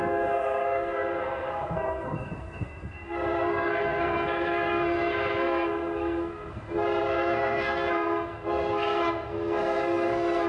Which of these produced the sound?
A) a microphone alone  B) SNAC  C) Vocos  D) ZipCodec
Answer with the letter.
B